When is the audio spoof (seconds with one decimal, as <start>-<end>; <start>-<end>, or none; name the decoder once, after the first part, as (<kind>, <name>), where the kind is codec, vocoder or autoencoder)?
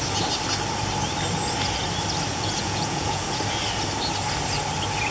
2.3-3.4 (vocoder, Vocos)